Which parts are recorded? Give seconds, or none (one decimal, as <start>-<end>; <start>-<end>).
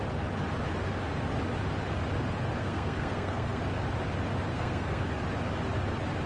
0.0-2.6; 3.6-4.5; 5.0-6.3